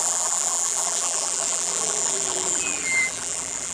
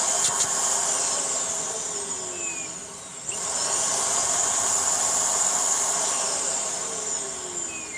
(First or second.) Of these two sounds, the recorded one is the second